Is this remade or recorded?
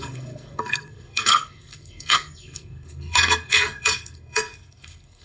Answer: remade